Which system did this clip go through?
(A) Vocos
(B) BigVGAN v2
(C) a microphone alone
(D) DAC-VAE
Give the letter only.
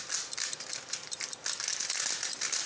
C